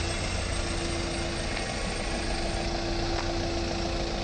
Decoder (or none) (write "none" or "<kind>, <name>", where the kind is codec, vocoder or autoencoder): none